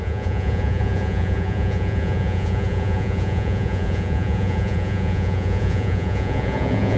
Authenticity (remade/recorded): remade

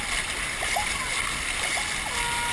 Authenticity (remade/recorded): recorded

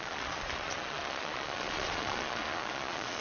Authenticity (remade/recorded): remade